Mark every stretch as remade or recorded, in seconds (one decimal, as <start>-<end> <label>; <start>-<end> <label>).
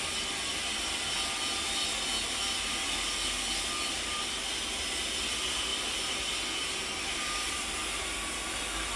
0.0-9.0 recorded